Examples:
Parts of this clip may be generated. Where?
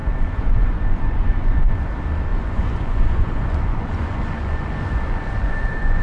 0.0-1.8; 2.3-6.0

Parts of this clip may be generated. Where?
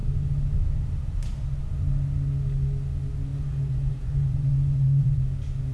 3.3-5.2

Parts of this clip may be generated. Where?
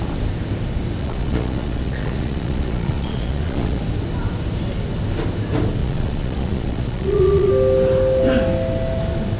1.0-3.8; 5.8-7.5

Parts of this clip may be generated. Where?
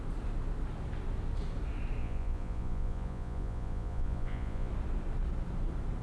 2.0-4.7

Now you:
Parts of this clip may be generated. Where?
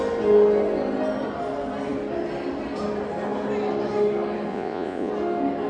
4.5-5.1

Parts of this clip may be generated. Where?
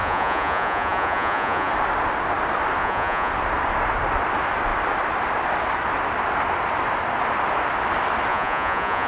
0.0-1.7; 2.8-3.3; 8.3-9.1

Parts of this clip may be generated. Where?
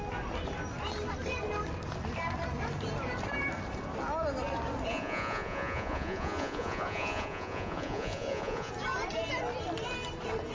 4.9-8.7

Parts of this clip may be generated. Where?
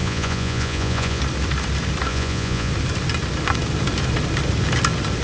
0.0-1.2; 2.1-2.7